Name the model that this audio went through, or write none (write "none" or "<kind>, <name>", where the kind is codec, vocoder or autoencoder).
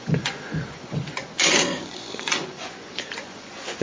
vocoder, Vocos